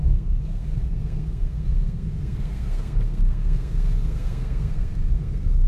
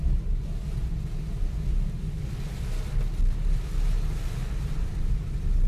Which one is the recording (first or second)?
second